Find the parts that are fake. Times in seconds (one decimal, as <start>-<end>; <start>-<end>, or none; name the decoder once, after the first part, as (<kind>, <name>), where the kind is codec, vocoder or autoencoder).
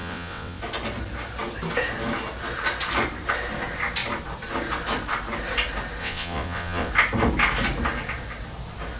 0.0-0.6 (vocoder, WaveNeXt); 6.0-6.9